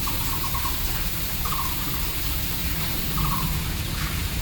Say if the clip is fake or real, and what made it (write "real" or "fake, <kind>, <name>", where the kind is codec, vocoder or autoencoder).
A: fake, vocoder, BigVGAN v2